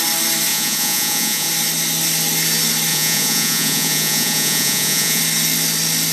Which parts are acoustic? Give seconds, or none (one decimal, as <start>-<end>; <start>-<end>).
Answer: 0.0-0.5; 1.5-2.9; 5.2-6.1